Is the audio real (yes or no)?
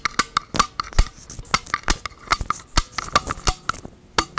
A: yes